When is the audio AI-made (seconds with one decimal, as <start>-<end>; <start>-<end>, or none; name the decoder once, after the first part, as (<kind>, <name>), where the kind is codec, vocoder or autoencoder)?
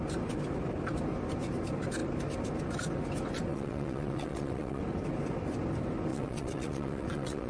3.5-4.8 (vocoder, WaveNeXt); 6.1-7.5